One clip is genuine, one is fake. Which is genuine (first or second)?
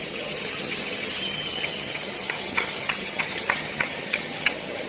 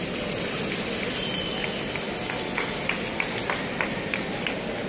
second